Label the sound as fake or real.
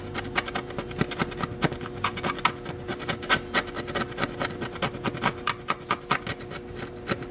real